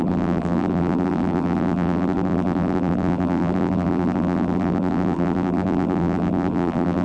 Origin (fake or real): fake